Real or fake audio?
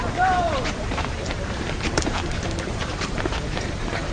fake